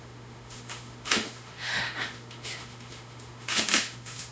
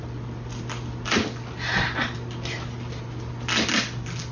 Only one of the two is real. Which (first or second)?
second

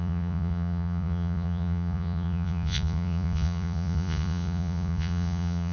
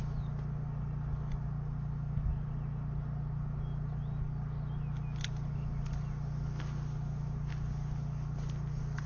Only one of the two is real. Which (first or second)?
second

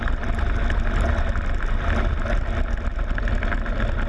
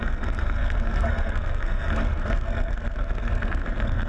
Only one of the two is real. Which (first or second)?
first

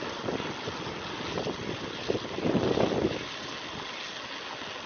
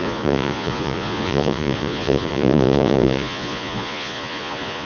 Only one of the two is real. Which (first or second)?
first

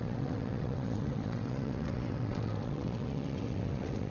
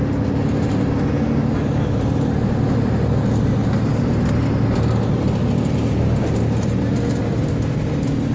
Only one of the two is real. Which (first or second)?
second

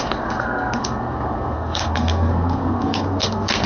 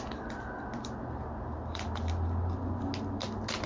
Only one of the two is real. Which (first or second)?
second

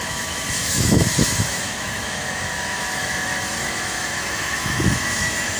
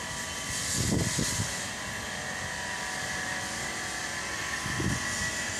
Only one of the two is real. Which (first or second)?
second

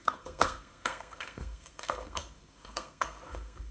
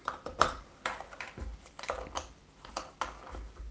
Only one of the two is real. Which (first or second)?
second